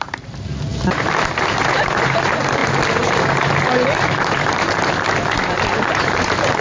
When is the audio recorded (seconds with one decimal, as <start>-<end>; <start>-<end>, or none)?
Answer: 2.6-4.0